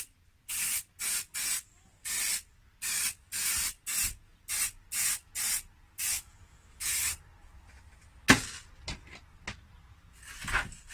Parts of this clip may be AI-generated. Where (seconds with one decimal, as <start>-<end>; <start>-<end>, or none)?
6.1-7.1